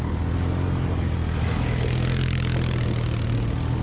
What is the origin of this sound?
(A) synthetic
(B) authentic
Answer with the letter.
B